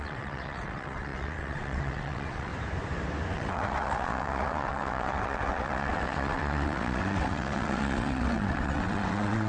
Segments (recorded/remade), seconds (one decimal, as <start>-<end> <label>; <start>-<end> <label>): 0.0-2.5 remade; 2.5-3.3 recorded; 3.3-9.5 remade